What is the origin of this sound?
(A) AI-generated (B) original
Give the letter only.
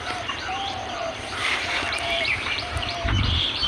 A